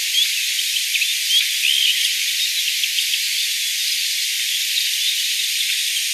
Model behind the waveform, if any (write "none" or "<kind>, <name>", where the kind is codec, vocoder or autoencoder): none